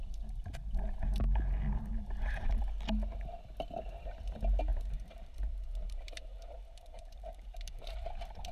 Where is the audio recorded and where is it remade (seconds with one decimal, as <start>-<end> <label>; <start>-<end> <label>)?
0.0-2.6 remade; 2.6-4.7 recorded; 4.7-8.5 remade